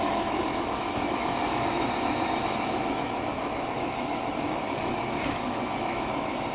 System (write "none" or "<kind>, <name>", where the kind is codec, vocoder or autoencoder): autoencoder, DAC-VAE